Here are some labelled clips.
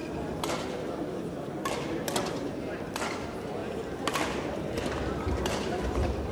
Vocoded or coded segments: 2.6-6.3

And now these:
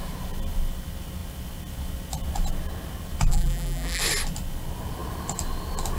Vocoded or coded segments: 3.3-4.0

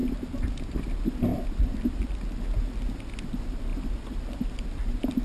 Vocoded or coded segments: 0.0-0.8; 1.3-2.4

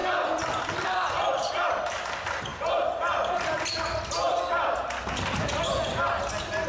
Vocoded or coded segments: 0.0-1.8

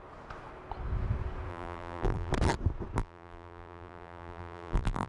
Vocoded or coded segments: 1.5-2.3; 3.0-5.1

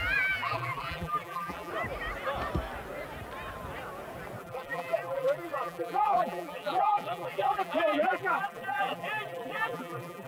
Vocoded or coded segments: 0.0-1.7; 4.4-10.3